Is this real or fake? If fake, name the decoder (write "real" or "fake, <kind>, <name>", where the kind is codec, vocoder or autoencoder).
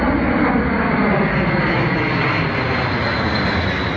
real